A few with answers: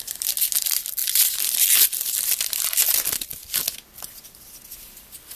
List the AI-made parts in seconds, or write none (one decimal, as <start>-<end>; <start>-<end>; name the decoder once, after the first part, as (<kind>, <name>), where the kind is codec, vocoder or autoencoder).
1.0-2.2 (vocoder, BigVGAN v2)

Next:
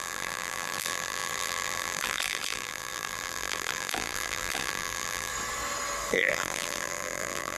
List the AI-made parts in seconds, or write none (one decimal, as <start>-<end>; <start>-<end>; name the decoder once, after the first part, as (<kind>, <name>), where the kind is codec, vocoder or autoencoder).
0.0-5.3 (vocoder, BigVGAN v2); 6.1-7.6

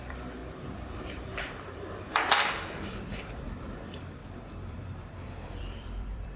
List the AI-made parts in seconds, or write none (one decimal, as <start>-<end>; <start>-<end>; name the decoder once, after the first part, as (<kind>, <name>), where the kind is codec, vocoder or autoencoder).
0.0-6.4 (vocoder, BigVGAN v2)

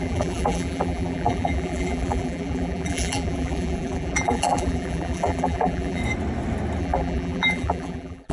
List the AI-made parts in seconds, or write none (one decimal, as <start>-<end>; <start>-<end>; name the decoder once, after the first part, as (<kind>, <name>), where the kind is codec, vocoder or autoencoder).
0.0-6.0 (vocoder, BigVGAN v2); 6.8-8.3

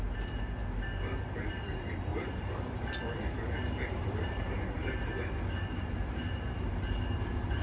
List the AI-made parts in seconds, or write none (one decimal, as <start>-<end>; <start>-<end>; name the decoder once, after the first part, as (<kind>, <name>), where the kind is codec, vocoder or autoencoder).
2.1-4.4 (vocoder, BigVGAN v2)

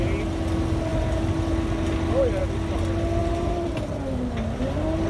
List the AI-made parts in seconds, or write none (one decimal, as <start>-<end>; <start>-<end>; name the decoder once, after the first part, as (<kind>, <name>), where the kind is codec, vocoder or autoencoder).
3.2-4.3 (vocoder, BigVGAN v2)

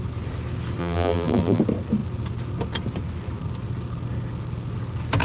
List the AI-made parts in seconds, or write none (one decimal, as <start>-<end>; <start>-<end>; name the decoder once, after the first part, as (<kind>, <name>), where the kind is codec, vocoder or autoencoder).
0.8-1.6 (vocoder, BigVGAN v2)